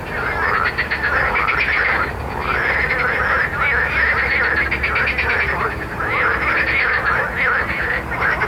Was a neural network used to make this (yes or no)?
no